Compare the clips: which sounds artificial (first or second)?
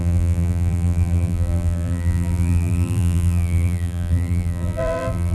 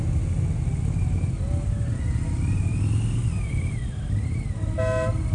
first